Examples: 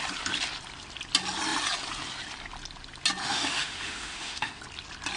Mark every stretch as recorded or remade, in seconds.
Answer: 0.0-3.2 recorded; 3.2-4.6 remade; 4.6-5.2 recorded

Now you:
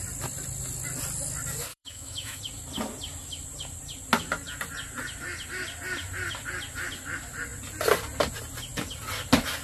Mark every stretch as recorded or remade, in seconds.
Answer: 0.0-1.7 recorded; 1.7-2.4 remade; 2.4-9.6 recorded

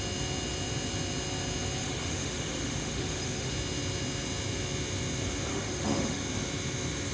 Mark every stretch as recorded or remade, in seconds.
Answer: 0.0-1.8 recorded; 1.8-3.5 remade; 3.5-5.5 recorded; 5.5-6.2 remade; 6.2-7.1 recorded

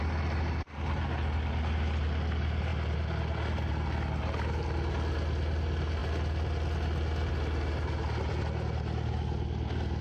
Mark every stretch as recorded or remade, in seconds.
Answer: 0.0-10.0 recorded